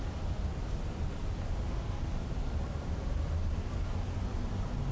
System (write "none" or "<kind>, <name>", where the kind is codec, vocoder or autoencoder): none